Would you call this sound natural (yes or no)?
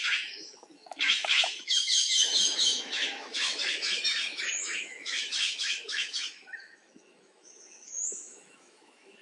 no